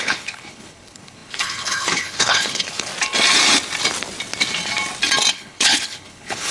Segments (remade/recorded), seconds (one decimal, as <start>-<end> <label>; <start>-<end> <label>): 0.0-2.9 remade; 2.9-5.3 recorded; 5.3-6.5 remade